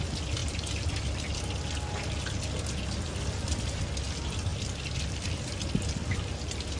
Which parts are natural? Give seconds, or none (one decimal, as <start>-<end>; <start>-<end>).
0.0-0.4; 1.3-4.5; 5.7-6.8